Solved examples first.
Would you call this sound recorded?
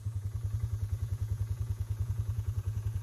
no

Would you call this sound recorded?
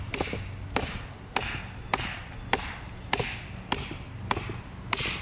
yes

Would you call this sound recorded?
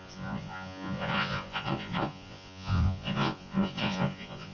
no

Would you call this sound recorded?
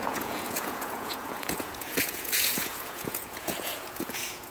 no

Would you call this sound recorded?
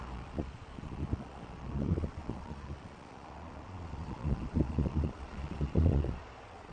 no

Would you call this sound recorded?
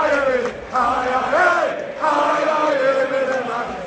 yes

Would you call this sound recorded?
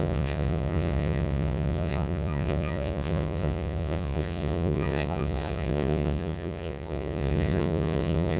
no